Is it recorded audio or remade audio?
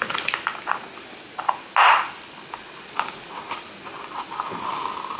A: recorded